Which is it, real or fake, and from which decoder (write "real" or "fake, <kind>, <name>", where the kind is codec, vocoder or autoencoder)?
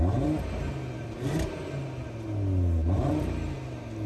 real